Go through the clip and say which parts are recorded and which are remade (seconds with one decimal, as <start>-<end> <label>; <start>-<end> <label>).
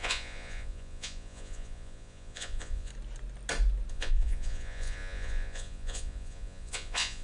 0.0-2.9 remade; 2.9-3.9 recorded; 3.9-7.2 remade